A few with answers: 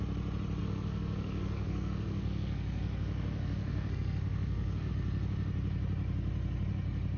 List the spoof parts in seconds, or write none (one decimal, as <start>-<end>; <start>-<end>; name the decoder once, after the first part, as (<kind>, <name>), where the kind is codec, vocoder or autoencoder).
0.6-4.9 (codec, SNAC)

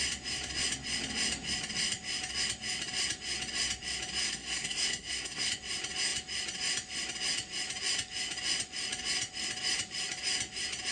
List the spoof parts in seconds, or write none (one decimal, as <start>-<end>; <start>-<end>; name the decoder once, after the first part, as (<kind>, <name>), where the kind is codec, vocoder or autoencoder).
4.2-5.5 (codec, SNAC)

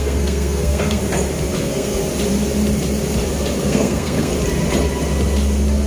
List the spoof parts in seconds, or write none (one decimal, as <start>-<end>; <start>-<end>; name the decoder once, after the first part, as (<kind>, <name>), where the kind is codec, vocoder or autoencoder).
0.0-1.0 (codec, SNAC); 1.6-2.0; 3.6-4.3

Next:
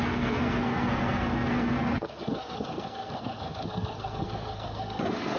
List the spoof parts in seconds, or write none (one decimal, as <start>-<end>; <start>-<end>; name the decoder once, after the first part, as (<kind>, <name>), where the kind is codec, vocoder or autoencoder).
0.0-5.4 (codec, SNAC)

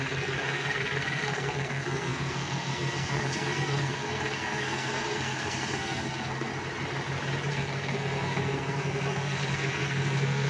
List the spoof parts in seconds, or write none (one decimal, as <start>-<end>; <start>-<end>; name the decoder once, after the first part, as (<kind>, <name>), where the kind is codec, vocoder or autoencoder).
0.0-6.5 (codec, SNAC); 7.5-10.5

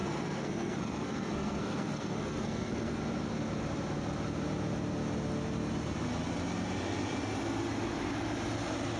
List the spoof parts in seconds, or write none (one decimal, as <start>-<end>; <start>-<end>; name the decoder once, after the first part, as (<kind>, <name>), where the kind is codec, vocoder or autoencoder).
0.0-3.0 (codec, SNAC)

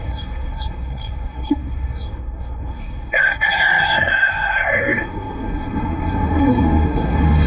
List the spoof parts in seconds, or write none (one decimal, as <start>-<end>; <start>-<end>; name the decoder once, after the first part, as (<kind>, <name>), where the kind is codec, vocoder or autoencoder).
0.0-7.5 (codec, SNAC)